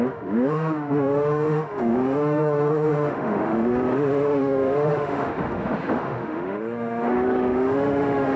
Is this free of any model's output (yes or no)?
no